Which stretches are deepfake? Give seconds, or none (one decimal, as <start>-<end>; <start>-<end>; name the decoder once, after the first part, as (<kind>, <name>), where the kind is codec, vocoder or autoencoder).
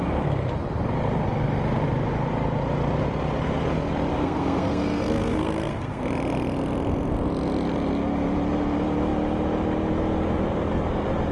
4.1-6.0 (codec, SNAC)